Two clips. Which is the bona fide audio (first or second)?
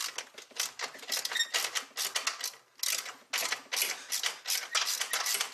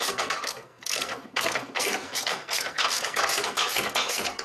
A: first